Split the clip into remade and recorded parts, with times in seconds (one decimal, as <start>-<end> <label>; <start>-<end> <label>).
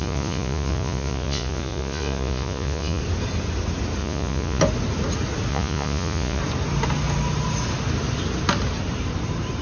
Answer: 0.0-3.0 remade; 3.0-4.0 recorded; 4.0-4.6 remade; 4.6-5.5 recorded; 5.5-6.4 remade; 6.4-9.6 recorded